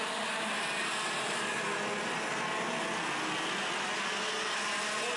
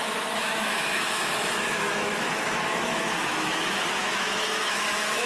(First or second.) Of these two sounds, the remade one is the second